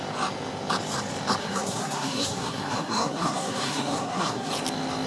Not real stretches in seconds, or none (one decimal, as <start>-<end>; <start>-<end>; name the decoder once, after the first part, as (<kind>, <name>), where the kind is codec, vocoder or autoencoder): 1.4-4.5 (codec, SNAC)